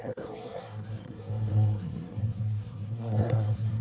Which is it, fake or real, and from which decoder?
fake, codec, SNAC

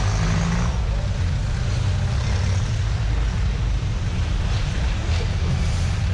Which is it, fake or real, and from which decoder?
real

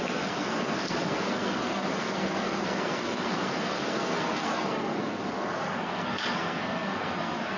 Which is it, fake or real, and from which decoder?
fake, codec, SNAC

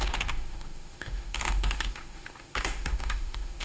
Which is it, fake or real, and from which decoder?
fake, autoencoder, DAC-VAE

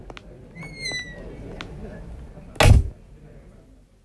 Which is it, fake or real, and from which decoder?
real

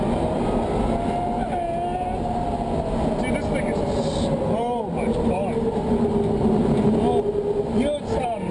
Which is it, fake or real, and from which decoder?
real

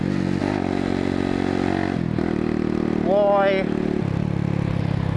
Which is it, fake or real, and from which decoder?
real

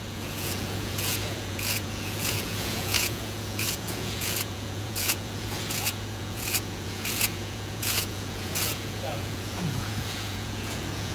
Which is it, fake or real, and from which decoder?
fake, vocoder, Vocos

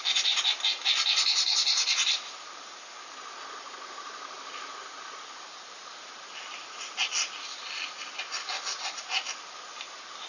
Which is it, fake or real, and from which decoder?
real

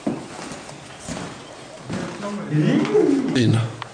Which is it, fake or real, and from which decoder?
real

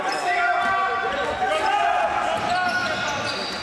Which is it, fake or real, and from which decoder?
real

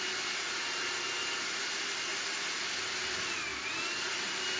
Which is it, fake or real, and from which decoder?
real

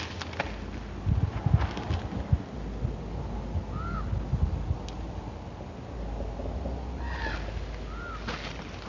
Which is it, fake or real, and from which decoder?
real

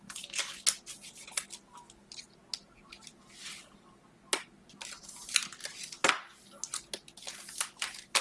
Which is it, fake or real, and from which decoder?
real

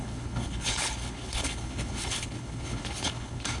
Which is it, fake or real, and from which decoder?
fake, codec, HILCodec